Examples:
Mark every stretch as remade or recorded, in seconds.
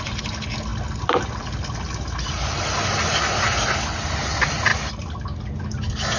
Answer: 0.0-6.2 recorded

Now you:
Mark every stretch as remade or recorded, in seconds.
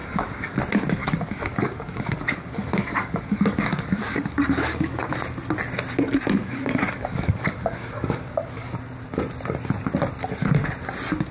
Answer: 0.0-0.6 remade; 0.6-1.0 recorded; 1.0-5.1 remade; 5.1-6.4 recorded; 6.4-8.7 remade; 8.7-11.3 recorded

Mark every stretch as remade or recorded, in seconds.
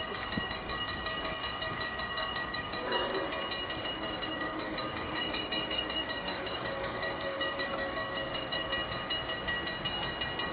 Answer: 0.0-3.1 remade; 3.1-3.8 recorded; 3.8-8.7 remade; 8.7-10.5 recorded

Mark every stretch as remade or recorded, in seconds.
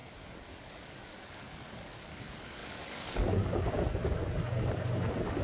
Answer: 0.0-5.4 remade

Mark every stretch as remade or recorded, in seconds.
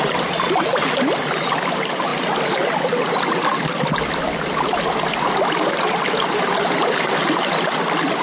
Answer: 0.0-8.2 recorded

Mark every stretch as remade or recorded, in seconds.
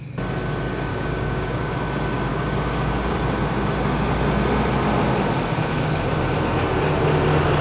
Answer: 0.0-0.9 recorded; 0.9-1.7 remade; 1.7-2.3 recorded; 2.3-3.1 remade; 3.1-7.6 recorded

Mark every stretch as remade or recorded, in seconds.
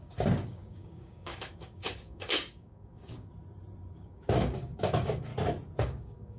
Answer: 0.0-3.3 remade; 3.3-3.9 recorded; 3.9-5.3 remade; 5.3-5.8 recorded; 5.8-6.4 remade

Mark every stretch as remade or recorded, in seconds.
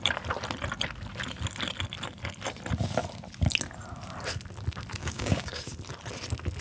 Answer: 0.0-5.0 recorded; 5.0-5.6 remade; 5.6-6.6 recorded